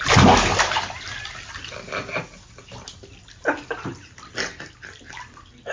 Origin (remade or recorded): recorded